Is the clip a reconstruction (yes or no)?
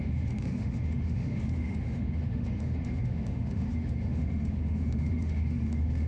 yes